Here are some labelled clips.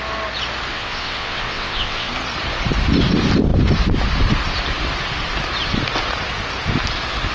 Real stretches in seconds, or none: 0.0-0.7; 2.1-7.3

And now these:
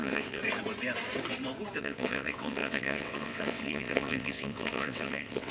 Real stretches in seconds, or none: 0.4-1.8

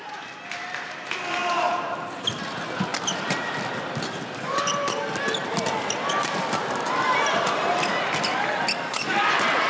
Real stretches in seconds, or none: 0.0-9.7

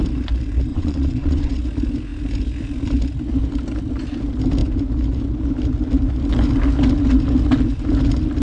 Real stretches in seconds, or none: 0.0-0.7; 1.6-8.4

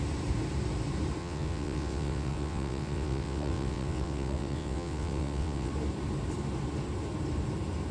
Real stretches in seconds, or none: 0.0-1.2; 5.7-7.9

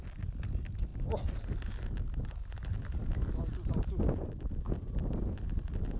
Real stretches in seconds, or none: 0.0-6.0

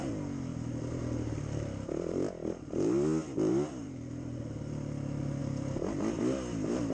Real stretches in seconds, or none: 0.0-6.9

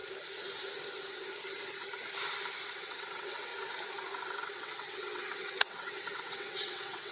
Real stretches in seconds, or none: 0.0-2.7; 3.5-4.4